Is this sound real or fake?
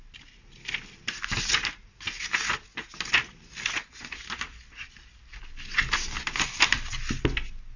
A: real